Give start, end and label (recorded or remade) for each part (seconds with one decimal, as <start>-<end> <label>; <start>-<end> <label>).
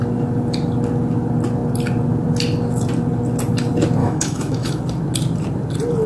0.0-4.0 recorded; 4.0-4.8 remade; 4.8-6.1 recorded